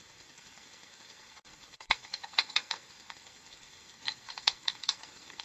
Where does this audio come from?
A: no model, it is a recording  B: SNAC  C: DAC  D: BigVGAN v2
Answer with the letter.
B